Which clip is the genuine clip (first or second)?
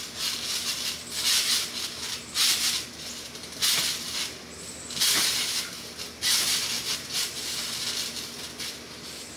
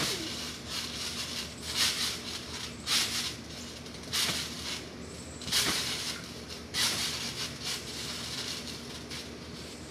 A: first